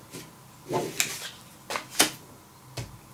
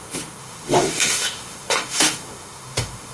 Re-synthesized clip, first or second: second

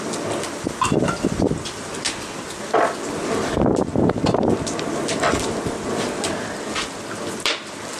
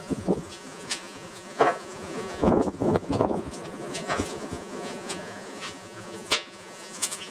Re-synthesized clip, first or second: second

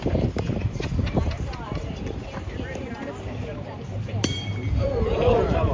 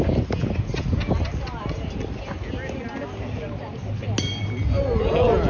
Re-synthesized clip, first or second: first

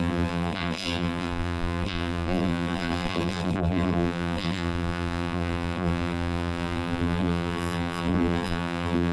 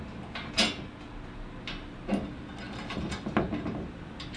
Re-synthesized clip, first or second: first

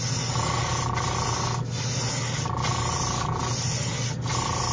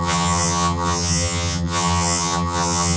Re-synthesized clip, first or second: second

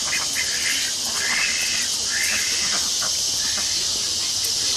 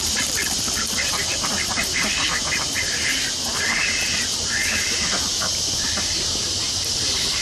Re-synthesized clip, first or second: second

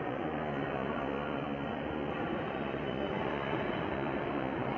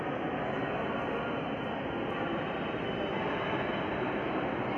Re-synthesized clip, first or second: first